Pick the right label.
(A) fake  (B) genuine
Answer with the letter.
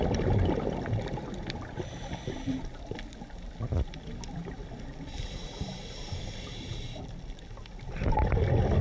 B